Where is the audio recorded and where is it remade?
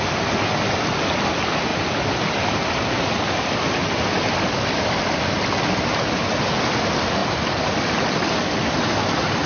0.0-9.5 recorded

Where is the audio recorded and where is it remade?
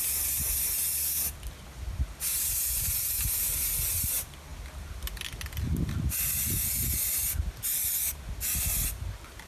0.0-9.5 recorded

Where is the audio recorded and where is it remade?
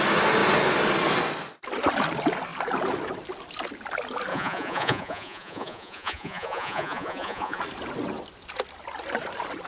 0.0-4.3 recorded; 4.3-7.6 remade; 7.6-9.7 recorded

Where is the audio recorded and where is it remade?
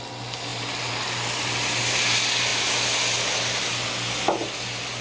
0.0-0.5 recorded; 0.5-1.8 remade; 1.8-5.0 recorded